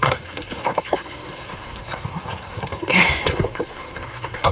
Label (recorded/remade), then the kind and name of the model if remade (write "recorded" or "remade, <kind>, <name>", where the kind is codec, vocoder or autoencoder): remade, codec, SNAC